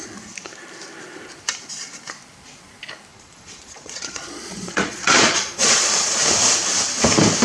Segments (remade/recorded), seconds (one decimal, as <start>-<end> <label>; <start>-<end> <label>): 0.0-3.1 recorded; 3.1-6.2 remade; 6.2-7.4 recorded